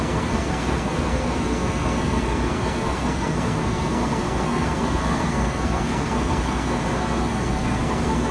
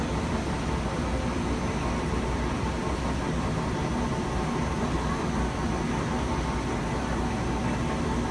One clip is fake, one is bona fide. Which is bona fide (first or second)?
second